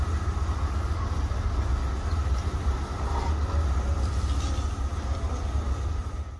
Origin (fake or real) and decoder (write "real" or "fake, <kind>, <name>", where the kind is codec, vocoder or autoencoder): real